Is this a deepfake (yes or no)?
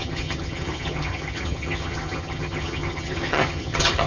yes